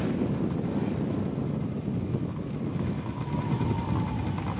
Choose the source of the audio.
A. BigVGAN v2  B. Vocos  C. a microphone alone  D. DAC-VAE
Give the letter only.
C